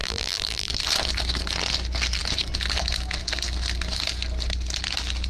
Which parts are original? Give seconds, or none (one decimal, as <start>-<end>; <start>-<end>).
0.7-5.3